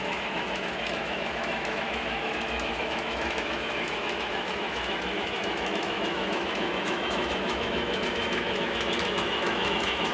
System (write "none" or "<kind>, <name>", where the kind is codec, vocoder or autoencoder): autoencoder, DAC-VAE